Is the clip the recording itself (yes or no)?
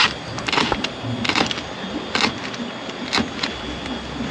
yes